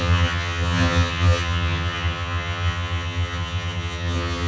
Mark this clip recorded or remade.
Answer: remade